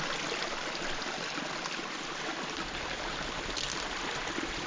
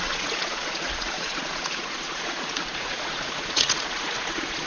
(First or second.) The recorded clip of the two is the first